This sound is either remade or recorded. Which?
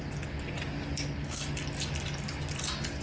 recorded